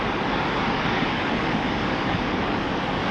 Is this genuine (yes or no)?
no